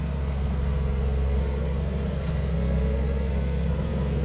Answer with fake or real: fake